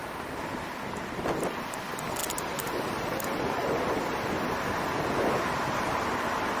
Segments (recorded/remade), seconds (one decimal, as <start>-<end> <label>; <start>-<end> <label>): 0.0-6.6 recorded